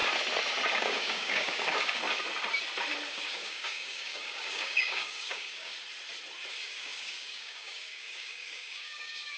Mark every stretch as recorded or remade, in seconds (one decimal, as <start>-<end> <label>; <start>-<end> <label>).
0.0-0.7 recorded; 0.7-2.0 remade; 2.0-3.1 recorded; 3.1-5.7 remade; 5.7-6.5 recorded; 6.5-9.4 remade